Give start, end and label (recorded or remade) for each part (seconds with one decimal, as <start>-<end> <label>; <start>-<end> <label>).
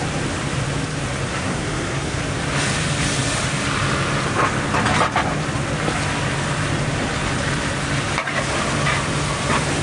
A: 0.0-1.3 recorded; 1.3-2.2 remade; 2.2-9.8 recorded